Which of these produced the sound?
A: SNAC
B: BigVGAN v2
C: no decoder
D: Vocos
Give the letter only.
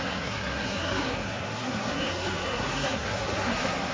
A